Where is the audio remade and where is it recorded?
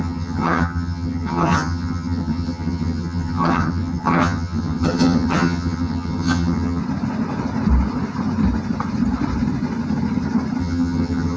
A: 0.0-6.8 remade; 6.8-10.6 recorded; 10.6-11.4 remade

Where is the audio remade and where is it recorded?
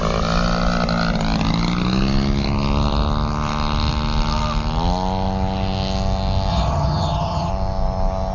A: 0.0-6.5 recorded; 6.5-7.5 remade; 7.5-8.3 recorded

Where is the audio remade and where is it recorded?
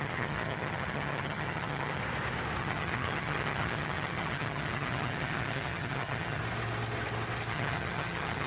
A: 0.0-2.0 remade; 2.0-2.6 recorded; 2.6-6.4 remade; 6.4-7.5 recorded; 7.5-8.5 remade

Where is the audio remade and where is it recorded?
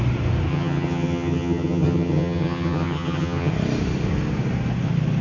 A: 0.0-0.5 recorded; 0.5-3.5 remade; 3.5-5.2 recorded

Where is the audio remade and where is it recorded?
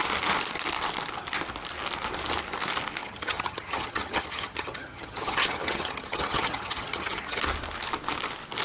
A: 0.0-3.0 recorded; 3.0-7.4 remade; 7.4-8.6 recorded